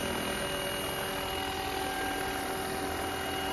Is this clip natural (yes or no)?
yes